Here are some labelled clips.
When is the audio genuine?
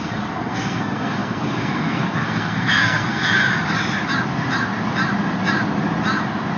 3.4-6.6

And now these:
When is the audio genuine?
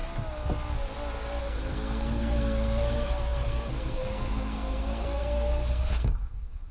0.0-1.4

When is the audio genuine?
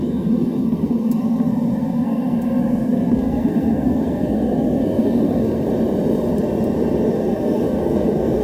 5.7-7.1